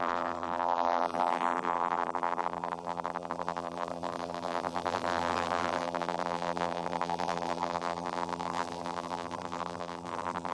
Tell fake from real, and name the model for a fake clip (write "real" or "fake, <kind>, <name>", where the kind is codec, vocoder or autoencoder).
fake, vocoder, BigVGAN v2